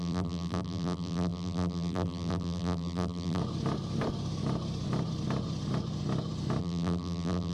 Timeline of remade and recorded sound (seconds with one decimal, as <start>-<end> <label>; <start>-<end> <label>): 0.0-3.4 remade; 3.4-6.6 recorded; 6.6-7.5 remade

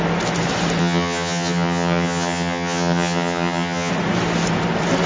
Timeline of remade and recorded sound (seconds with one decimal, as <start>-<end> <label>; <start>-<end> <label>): 0.0-0.8 recorded; 0.8-3.9 remade; 3.9-5.1 recorded

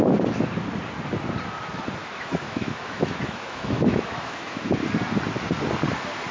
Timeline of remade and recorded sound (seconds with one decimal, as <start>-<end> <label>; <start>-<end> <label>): 0.0-2.0 recorded; 2.0-4.7 remade; 4.7-6.3 recorded

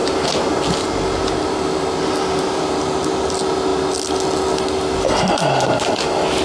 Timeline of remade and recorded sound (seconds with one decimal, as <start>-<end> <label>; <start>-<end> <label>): 0.0-6.4 recorded

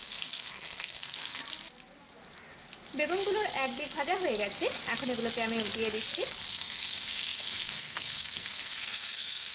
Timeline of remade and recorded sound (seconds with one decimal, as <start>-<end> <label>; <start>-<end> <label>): 0.0-1.4 remade; 1.4-6.5 recorded; 6.5-9.5 remade

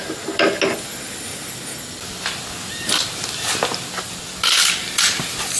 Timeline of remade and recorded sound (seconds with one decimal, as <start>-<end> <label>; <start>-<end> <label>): 0.0-5.6 recorded

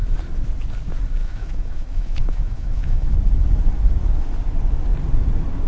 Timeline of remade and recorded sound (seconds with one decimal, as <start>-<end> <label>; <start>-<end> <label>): 0.0-1.2 recorded; 1.2-3.1 remade; 3.1-5.7 recorded

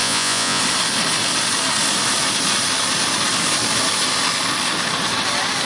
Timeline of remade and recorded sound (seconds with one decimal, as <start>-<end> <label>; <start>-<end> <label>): 0.0-0.6 remade; 0.6-5.6 recorded